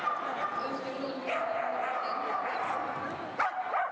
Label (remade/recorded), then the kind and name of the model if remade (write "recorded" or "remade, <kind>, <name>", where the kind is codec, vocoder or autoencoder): recorded